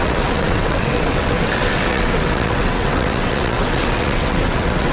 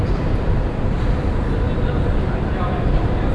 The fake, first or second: first